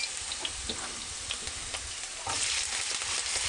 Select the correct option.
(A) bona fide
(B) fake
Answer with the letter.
A